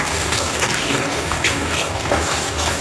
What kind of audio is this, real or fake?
fake